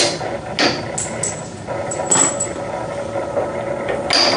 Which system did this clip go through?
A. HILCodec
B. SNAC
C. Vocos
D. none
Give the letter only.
D